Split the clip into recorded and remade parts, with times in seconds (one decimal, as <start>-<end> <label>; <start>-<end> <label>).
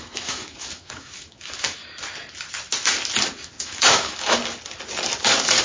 0.0-1.8 remade; 1.8-3.3 recorded; 3.3-4.4 remade; 4.4-5.6 recorded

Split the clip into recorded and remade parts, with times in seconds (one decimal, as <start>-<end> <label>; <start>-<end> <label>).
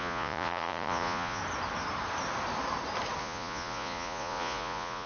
0.0-1.4 remade; 1.4-3.2 recorded; 3.2-5.1 remade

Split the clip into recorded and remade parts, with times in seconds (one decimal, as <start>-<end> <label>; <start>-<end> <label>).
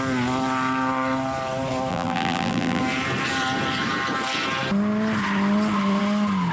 0.0-1.9 recorded; 1.9-2.8 remade; 2.8-6.5 recorded